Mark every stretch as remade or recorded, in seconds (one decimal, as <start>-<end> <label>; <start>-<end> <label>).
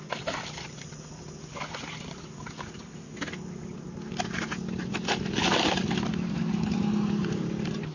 0.0-7.9 recorded